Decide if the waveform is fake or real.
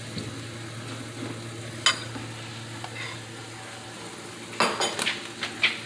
real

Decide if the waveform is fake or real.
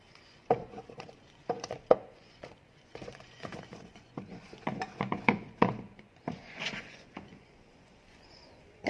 fake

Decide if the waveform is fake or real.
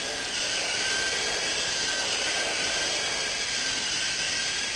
real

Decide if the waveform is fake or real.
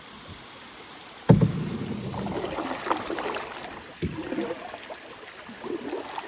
real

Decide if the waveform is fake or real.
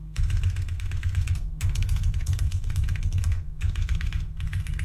fake